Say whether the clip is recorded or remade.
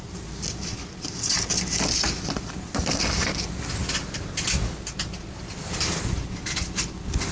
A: recorded